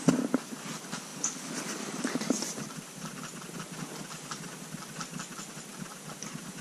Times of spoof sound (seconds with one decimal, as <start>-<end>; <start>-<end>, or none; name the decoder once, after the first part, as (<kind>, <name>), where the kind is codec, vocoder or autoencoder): none